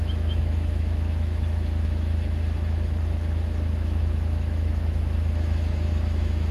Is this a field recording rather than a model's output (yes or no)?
no